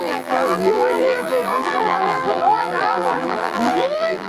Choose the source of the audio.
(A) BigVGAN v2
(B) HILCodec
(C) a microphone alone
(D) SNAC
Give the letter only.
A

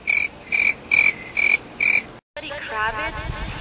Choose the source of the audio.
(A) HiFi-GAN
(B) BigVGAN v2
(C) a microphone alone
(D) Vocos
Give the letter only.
C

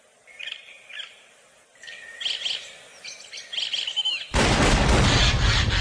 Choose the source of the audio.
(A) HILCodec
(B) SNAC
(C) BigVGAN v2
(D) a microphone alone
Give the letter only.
D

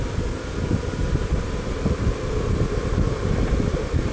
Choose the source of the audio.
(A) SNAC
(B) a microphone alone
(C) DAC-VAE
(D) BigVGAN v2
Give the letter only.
D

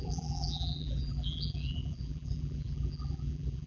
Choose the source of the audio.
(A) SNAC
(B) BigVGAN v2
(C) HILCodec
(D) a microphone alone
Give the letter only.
B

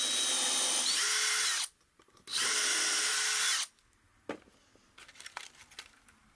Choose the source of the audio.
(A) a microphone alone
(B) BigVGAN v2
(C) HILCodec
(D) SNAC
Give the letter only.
A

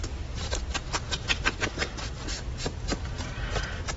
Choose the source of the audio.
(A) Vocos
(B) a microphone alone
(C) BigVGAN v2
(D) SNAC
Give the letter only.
C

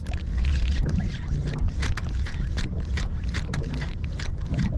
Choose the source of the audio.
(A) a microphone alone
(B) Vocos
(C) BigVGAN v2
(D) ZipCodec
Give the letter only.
A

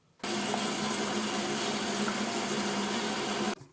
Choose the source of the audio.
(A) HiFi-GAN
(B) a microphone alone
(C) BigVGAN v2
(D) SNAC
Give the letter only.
B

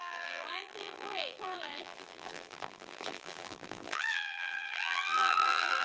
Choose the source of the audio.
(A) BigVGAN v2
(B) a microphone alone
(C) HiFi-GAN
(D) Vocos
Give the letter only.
A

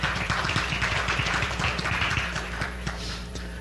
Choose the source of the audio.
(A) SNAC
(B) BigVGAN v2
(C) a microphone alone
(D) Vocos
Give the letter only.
B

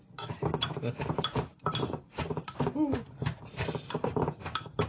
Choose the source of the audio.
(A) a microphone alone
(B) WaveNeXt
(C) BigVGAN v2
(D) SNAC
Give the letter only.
C